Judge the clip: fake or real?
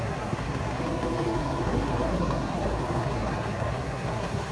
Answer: fake